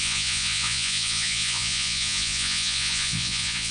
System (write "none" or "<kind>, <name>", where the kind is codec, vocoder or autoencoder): vocoder, Vocos